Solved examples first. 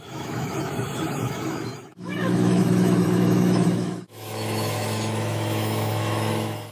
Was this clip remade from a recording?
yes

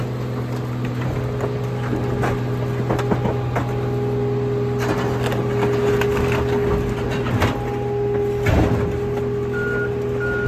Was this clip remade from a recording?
no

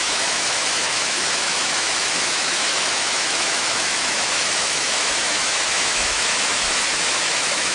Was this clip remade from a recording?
yes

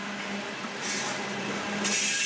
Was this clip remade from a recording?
no